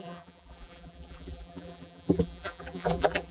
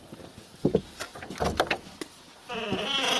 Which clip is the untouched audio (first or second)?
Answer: second